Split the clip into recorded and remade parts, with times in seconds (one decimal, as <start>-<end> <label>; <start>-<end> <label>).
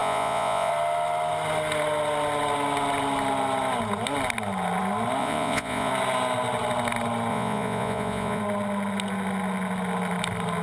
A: 0.0-0.7 remade; 0.7-5.2 recorded; 5.2-5.9 remade; 5.9-7.3 recorded; 7.3-8.4 remade; 8.4-10.6 recorded